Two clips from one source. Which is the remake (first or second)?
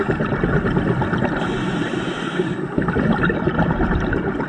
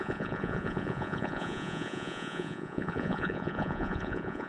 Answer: second